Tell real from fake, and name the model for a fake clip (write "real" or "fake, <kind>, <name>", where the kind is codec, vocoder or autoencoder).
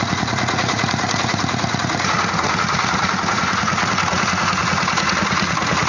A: fake, vocoder, Vocos